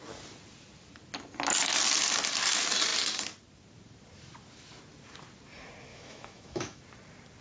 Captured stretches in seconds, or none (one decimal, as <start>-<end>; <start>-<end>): 0.0-5.9; 6.8-7.4